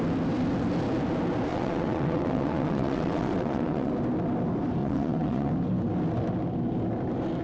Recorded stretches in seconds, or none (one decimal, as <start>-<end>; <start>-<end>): 0.0-1.5; 3.9-4.8; 5.5-7.4

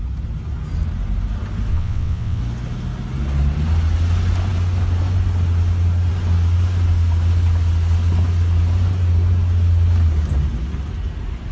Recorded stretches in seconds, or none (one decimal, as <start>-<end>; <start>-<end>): 0.0-1.7; 2.4-11.5

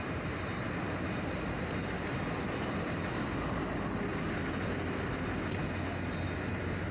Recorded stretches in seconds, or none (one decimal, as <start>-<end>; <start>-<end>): 0.0-6.9

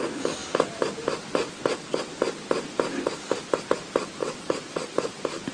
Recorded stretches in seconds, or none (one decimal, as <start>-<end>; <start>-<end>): 0.0-4.2; 4.8-5.5